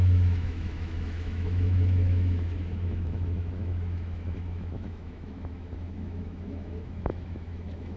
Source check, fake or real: fake